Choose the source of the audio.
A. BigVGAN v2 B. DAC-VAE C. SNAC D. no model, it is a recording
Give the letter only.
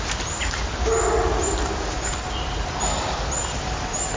D